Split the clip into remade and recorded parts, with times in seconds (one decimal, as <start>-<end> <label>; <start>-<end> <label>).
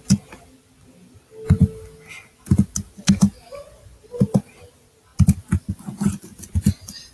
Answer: 0.0-7.1 recorded